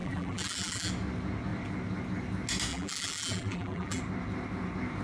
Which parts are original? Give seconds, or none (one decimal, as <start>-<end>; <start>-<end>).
0.9-2.7; 4.0-5.0